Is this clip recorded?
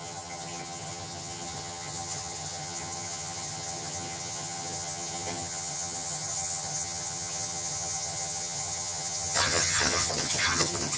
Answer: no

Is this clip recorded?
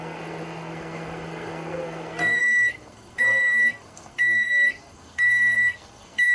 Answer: no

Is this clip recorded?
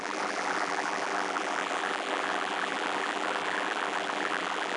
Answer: no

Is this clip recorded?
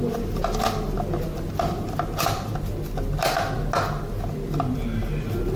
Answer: yes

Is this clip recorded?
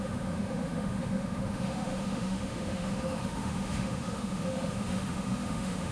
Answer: no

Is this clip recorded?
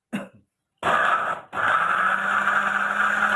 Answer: yes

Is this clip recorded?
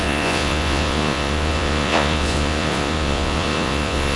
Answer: no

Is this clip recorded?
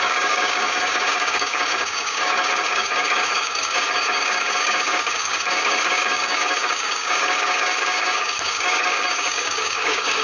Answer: no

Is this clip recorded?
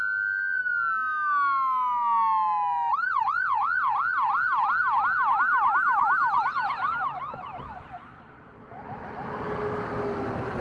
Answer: yes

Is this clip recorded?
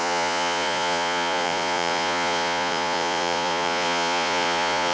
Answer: no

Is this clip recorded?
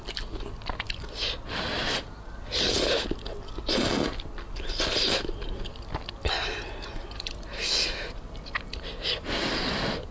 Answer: yes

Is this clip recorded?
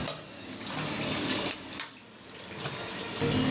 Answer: yes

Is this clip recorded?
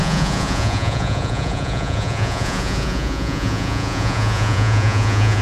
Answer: no